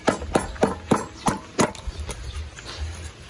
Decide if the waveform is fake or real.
real